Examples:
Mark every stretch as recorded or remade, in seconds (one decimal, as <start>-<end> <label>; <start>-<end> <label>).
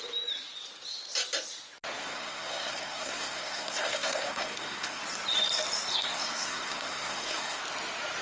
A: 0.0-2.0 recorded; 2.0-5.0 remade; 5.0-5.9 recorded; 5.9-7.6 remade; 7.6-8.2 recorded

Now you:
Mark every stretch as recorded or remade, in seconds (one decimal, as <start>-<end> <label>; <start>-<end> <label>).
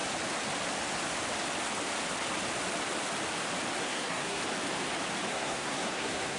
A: 0.0-3.8 recorded; 3.8-4.4 remade; 4.4-5.3 recorded; 5.3-6.4 remade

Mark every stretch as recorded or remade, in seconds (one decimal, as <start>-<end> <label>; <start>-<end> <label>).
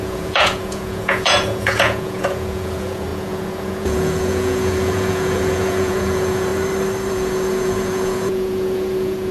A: 0.0-6.5 remade; 6.5-7.1 recorded; 7.1-9.3 remade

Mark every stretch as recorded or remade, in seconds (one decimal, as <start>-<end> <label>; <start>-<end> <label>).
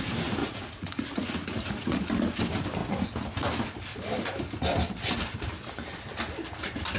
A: 0.0-0.4 recorded; 0.4-2.0 remade; 2.0-7.0 recorded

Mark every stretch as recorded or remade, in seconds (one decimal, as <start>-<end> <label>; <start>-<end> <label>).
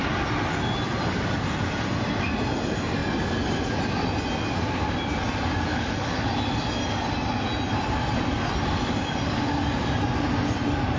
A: 0.0-5.7 recorded; 5.7-6.3 remade; 6.3-11.0 recorded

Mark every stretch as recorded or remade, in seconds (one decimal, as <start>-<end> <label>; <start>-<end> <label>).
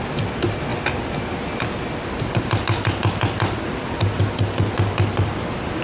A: 0.0-5.8 recorded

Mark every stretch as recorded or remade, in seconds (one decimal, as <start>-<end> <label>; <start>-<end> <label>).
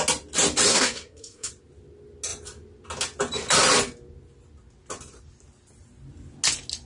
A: 0.0-0.7 recorded; 0.7-1.5 remade; 1.5-6.9 recorded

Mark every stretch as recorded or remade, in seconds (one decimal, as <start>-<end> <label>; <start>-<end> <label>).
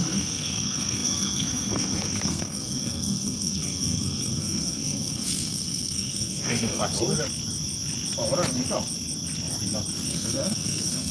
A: 0.0-6.8 remade; 6.8-10.1 recorded; 10.1-11.1 remade